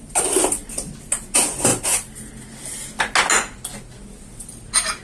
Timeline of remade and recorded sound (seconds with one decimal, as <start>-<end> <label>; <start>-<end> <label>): 0.0-5.0 recorded